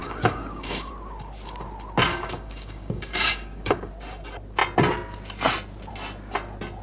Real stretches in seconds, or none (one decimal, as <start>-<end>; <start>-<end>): 0.9-2.1; 3.9-6.8